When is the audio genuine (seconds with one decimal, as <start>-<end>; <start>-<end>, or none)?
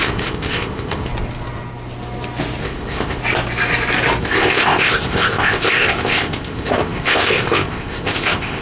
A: 1.1-2.6; 3.2-4.2